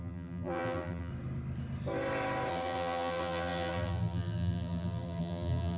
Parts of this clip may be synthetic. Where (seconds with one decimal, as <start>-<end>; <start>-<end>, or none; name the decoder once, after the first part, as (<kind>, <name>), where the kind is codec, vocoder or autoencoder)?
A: 0.0-1.1 (vocoder, BigVGAN v2); 2.5-5.8